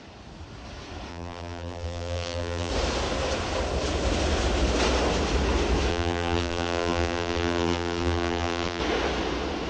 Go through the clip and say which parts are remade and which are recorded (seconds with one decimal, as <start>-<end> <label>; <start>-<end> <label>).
0.0-1.1 recorded; 1.1-2.7 remade; 2.7-5.9 recorded; 5.9-8.8 remade; 8.8-9.7 recorded